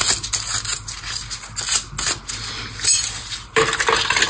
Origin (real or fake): real